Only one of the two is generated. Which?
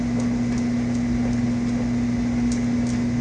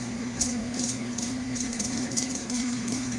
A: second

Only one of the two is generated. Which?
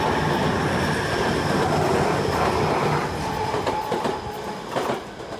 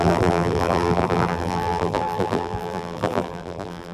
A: second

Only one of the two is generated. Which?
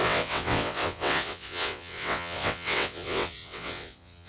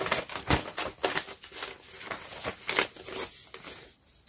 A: first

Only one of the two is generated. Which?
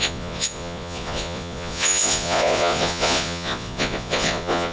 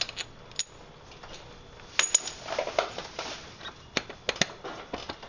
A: first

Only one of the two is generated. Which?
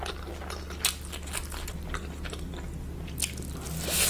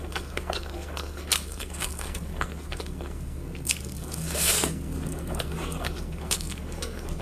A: second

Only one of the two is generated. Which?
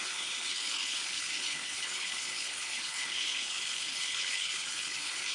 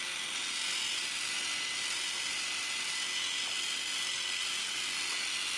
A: first